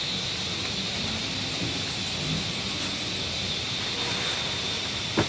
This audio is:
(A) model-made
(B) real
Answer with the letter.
B